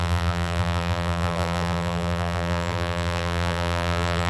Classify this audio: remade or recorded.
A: remade